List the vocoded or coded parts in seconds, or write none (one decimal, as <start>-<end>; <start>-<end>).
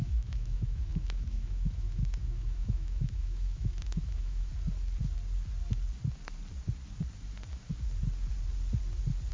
0.0-4.5